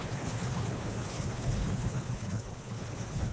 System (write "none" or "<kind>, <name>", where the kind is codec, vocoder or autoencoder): codec, HILCodec